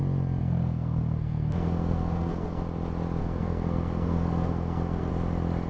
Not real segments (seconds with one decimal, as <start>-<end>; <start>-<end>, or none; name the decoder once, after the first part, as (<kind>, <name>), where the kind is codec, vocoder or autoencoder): 0.4-2.6 (codec, SNAC); 3.2-5.1